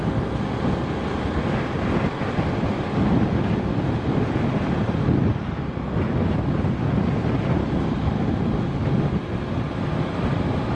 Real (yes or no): yes